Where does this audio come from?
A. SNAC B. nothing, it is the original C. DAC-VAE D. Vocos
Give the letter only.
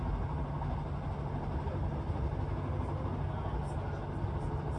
B